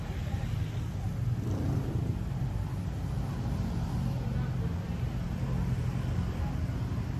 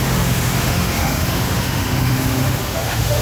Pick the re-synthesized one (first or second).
second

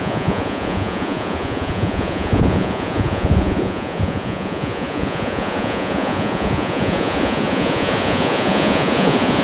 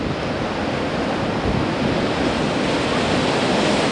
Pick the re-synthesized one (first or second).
first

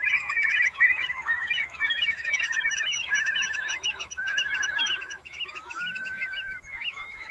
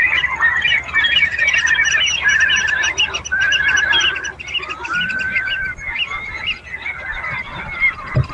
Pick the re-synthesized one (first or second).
first